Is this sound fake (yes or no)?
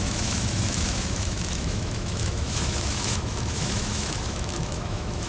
yes